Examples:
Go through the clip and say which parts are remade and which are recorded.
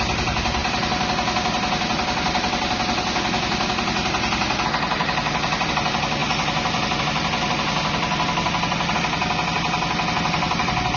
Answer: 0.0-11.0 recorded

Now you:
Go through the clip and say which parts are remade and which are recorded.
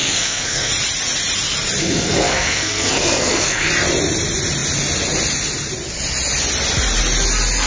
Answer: 0.0-0.7 remade; 0.7-1.8 recorded; 1.8-3.7 remade; 3.7-7.7 recorded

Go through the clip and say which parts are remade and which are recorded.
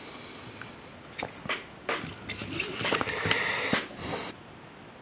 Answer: 0.0-5.0 recorded